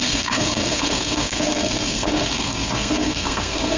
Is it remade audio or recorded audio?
remade